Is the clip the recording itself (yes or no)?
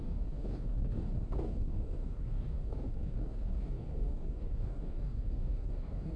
no